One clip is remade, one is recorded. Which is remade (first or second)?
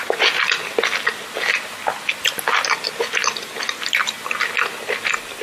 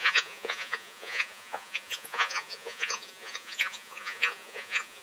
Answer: second